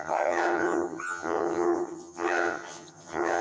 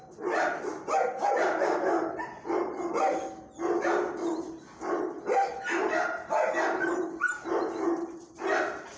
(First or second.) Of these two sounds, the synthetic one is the first